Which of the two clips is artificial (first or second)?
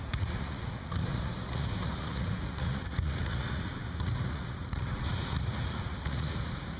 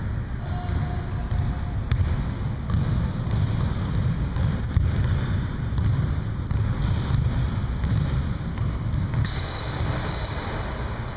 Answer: first